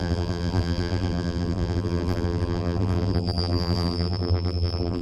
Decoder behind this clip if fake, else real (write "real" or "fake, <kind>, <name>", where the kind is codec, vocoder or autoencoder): fake, vocoder, BigVGAN v2